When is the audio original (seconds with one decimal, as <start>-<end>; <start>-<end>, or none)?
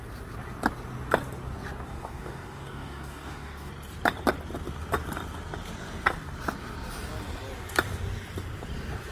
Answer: 0.0-1.9; 3.7-9.1